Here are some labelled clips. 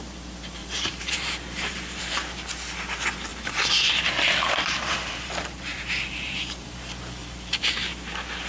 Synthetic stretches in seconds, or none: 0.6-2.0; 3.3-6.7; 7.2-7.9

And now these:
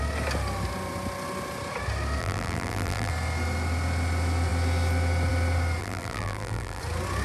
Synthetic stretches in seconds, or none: 2.2-3.1; 5.8-6.8